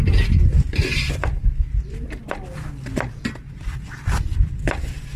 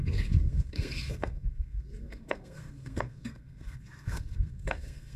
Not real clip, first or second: second